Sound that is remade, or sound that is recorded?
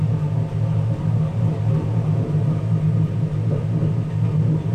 recorded